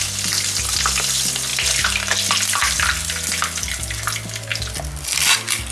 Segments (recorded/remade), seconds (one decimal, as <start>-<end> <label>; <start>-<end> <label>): 0.0-5.7 recorded